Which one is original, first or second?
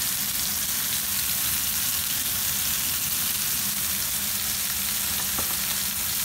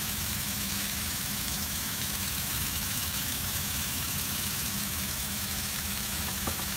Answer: first